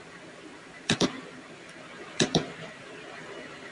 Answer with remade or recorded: remade